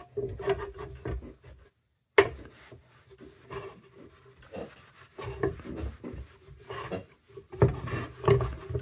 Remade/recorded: recorded